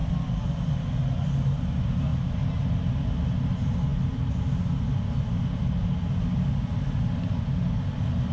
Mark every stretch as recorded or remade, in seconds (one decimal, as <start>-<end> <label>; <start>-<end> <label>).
0.0-8.3 recorded

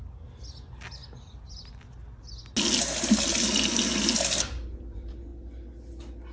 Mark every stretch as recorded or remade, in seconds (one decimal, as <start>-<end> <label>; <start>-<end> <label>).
0.0-6.3 recorded

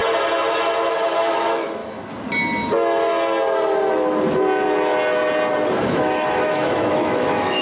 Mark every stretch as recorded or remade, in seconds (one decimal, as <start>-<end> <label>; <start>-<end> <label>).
0.0-0.9 recorded; 0.9-1.8 remade; 1.8-5.8 recorded; 5.8-7.6 remade

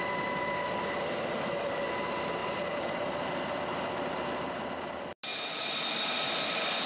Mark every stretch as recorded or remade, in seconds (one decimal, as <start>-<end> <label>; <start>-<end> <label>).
0.0-6.9 recorded

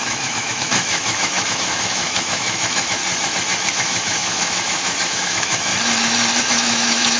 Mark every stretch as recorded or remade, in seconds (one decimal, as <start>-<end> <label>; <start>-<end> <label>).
0.0-3.0 remade; 3.0-3.7 recorded; 3.7-5.7 remade; 5.7-6.4 recorded; 6.4-7.2 remade

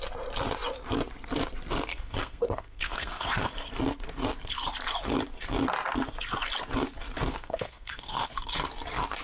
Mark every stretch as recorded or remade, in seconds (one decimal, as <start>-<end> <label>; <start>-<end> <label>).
0.0-1.9 recorded; 1.9-3.5 remade; 3.5-7.3 recorded; 7.3-8.3 remade; 8.3-9.2 recorded

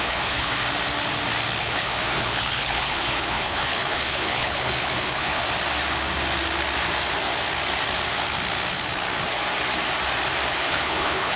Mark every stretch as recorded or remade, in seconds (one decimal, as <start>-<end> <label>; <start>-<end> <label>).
0.0-0.6 remade; 0.6-1.6 recorded; 1.6-5.4 remade; 5.4-10.5 recorded; 10.5-11.4 remade

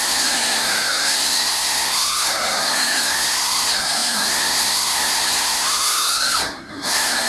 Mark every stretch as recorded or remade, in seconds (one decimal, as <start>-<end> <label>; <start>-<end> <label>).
0.0-7.3 remade